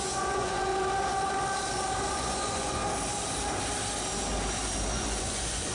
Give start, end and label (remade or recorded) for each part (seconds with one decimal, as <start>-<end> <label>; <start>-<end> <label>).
0.0-0.7 remade; 0.7-2.1 recorded; 2.1-2.8 remade; 2.8-4.9 recorded; 4.9-5.7 remade